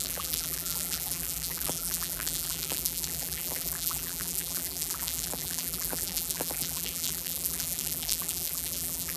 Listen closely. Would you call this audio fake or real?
fake